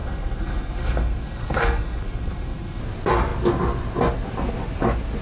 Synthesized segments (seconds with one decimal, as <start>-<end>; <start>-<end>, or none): 0.0-2.8